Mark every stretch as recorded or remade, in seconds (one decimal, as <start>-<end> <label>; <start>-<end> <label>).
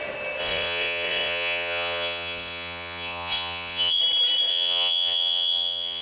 0.0-0.4 recorded; 0.4-4.0 remade; 4.0-4.5 recorded; 4.5-6.0 remade